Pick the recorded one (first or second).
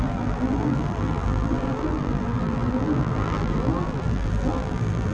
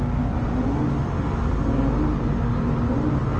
second